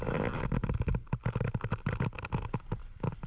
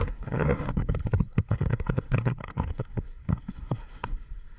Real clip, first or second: first